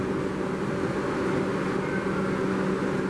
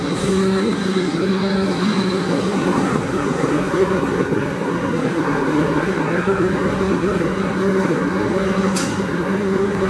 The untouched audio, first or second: first